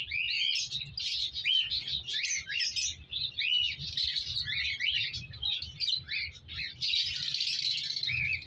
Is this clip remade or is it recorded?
recorded